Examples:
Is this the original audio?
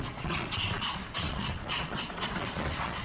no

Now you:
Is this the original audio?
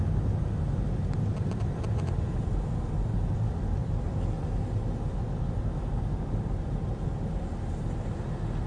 yes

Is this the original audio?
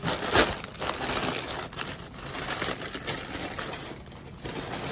yes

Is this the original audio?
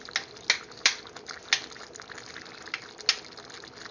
yes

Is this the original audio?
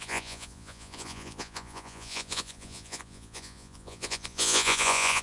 no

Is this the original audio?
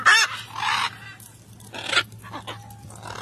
yes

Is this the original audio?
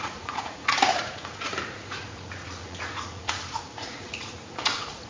no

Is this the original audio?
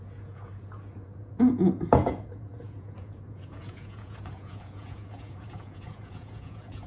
no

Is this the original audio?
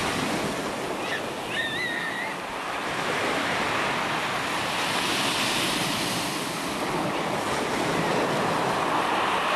yes